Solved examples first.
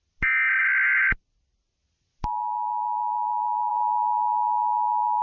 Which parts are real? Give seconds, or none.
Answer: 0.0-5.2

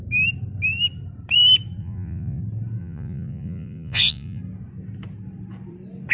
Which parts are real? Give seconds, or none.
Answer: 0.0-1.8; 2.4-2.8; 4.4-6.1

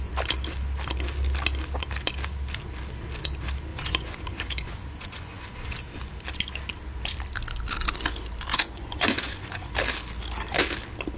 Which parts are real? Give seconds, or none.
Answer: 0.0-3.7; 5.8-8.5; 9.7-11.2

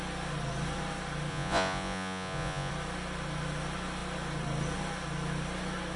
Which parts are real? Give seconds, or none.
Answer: 0.0-1.3; 2.7-6.0